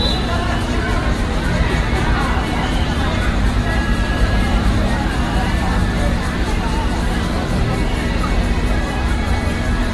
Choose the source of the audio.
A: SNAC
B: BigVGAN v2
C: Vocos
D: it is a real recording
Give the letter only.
B